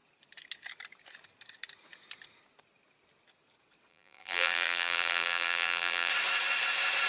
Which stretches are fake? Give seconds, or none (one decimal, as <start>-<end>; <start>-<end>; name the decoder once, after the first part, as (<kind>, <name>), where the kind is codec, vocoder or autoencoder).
3.9-6.1 (vocoder, BigVGAN v2)